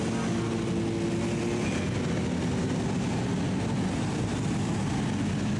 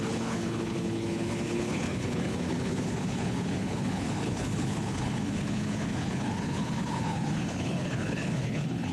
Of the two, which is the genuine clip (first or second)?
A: first